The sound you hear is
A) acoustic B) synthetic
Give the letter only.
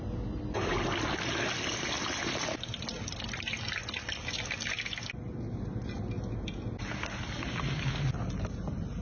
A